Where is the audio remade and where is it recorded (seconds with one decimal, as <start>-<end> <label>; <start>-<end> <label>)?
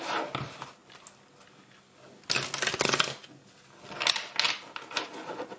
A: 0.0-5.6 recorded